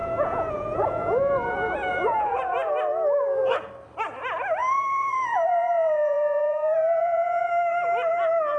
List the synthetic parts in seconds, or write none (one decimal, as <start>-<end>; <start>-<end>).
0.0-1.5; 1.9-2.7; 4.6-7.5